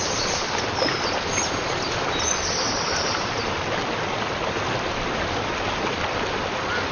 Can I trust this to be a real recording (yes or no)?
yes